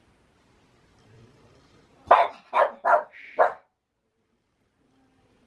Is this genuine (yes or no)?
no